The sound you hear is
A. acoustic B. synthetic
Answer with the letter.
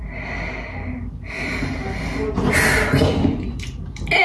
A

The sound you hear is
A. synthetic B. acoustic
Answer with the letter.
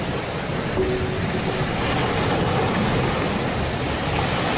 B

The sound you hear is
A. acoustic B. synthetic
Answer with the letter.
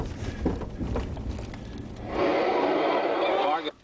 A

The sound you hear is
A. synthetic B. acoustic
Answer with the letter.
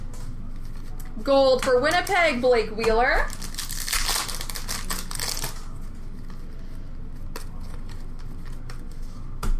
B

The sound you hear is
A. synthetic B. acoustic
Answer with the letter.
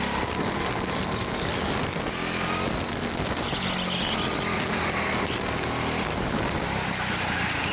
B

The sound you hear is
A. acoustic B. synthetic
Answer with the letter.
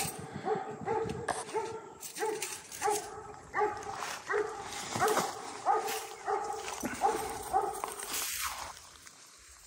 B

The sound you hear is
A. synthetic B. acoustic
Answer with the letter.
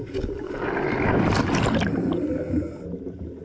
B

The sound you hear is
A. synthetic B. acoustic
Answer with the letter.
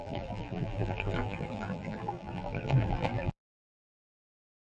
A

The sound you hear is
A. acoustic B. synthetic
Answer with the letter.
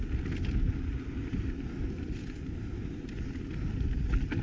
A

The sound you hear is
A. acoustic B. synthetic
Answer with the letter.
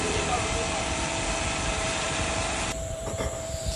B